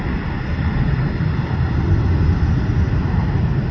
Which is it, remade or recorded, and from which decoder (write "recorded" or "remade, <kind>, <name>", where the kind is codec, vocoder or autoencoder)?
recorded